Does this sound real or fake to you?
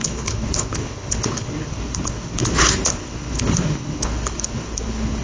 fake